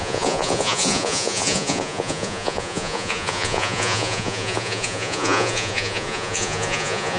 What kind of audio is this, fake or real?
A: fake